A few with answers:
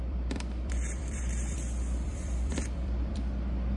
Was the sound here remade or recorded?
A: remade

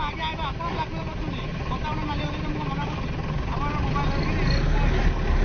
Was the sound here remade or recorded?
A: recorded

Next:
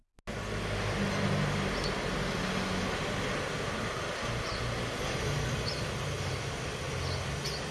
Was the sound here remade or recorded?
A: recorded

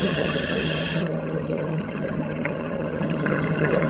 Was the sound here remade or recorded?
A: remade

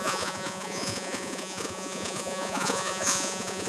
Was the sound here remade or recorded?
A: remade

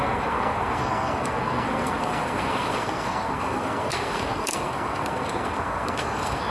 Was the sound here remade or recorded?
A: remade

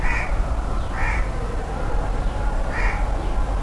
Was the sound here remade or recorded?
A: recorded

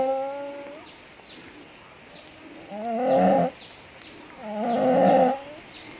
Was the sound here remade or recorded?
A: recorded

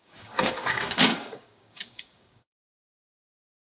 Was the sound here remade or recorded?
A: remade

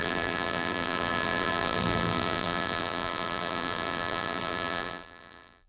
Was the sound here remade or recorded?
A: remade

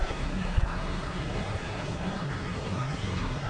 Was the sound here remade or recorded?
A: remade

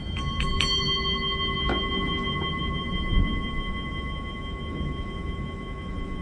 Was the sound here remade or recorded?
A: remade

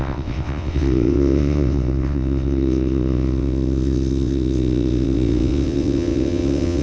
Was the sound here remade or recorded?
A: remade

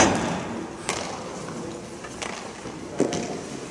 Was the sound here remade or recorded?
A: recorded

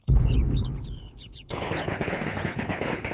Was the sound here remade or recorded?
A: remade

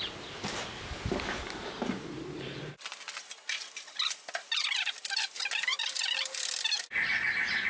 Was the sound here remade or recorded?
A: recorded